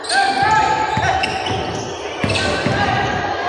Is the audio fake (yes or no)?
no